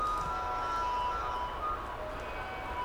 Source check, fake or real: real